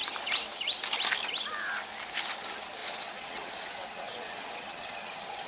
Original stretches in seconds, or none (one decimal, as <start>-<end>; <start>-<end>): 0.0-2.8